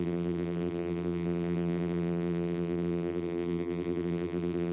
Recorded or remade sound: remade